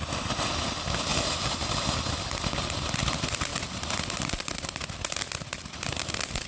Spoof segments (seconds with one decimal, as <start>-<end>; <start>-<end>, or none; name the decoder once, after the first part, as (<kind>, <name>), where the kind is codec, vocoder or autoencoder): none